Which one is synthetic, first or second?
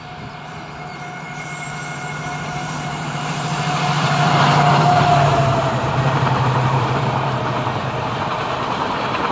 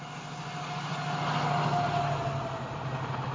first